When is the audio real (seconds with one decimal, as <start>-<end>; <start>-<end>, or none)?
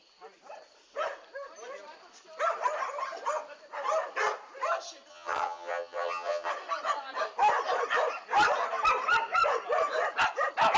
0.0-5.1; 6.5-10.8